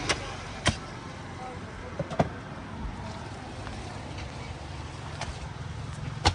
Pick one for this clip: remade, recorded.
recorded